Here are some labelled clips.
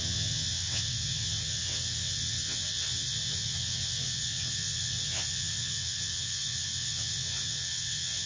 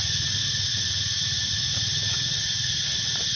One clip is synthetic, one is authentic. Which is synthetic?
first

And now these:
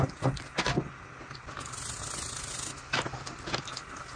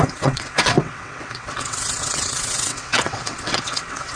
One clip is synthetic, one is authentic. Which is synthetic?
second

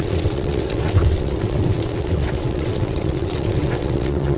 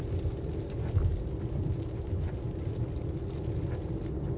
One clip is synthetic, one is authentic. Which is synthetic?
first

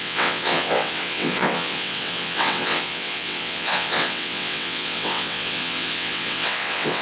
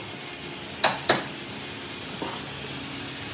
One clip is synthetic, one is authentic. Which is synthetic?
first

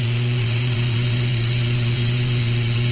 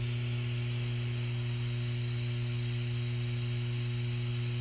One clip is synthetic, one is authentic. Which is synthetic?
first